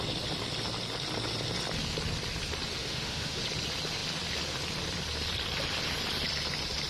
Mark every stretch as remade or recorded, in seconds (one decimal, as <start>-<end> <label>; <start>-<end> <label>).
0.0-2.8 recorded; 2.8-3.4 remade; 3.4-6.9 recorded